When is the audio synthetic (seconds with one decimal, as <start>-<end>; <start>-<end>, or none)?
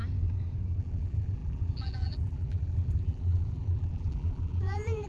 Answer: 0.8-5.1